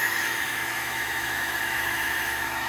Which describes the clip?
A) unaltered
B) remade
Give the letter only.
B